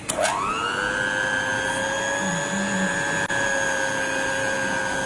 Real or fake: real